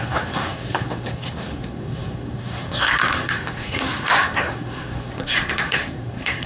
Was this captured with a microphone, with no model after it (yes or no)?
no